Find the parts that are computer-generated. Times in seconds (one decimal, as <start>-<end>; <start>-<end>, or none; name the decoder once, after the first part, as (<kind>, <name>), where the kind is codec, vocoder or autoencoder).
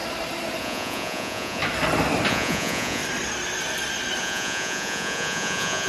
0.6-1.6 (vocoder, Vocos); 2.3-3.0; 4.2-5.9